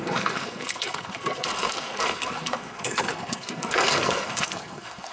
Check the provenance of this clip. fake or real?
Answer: fake